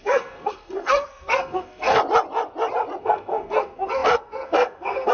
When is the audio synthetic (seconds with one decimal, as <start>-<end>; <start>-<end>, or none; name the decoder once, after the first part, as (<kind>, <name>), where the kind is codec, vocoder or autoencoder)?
0.0-2.0 (codec, SNAC); 3.0-5.1